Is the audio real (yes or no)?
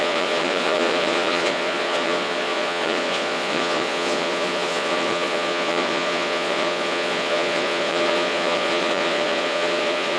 no